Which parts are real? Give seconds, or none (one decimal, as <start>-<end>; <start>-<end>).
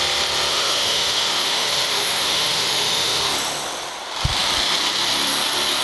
0.0-0.5; 3.2-5.8